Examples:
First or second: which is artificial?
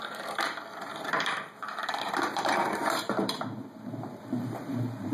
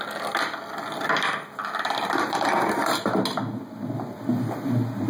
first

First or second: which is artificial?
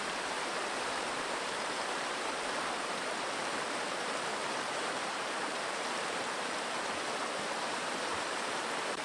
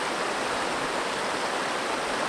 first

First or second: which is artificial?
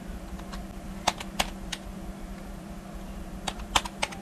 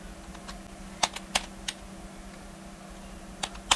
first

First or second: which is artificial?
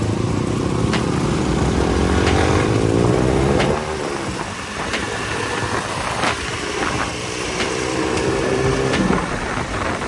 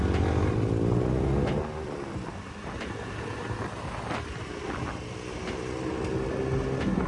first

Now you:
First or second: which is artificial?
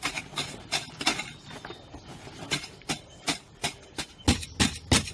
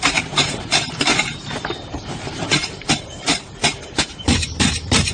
second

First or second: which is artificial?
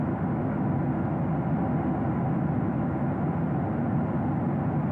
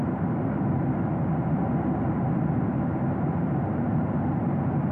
second